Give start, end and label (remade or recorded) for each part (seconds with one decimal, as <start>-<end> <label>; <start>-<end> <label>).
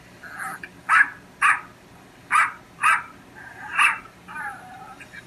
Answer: 0.0-3.7 recorded; 3.7-4.6 remade; 4.6-5.3 recorded